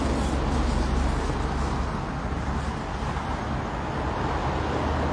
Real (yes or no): yes